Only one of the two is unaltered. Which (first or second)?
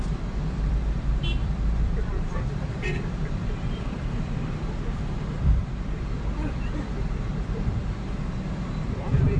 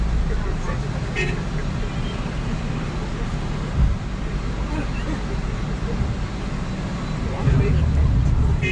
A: second